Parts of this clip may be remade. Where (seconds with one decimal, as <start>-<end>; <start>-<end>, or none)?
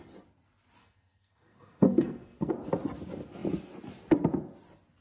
0.8-2.5